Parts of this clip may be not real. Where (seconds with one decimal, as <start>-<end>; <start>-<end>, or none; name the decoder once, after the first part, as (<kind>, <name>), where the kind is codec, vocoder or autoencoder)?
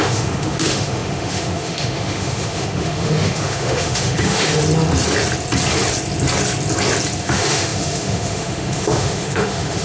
0.0-4.6 (autoencoder, DAC-VAE); 7.2-9.8